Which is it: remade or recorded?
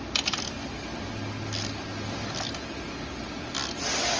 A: recorded